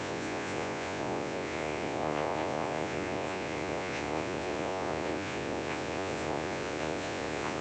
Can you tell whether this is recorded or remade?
remade